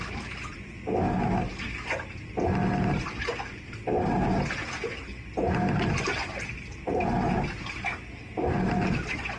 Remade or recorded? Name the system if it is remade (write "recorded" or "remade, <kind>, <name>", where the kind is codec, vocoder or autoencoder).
recorded